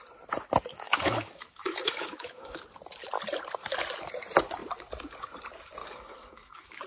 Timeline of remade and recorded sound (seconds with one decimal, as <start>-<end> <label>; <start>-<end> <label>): 0.0-0.7 recorded; 0.7-2.6 remade; 2.6-5.8 recorded; 5.8-6.9 remade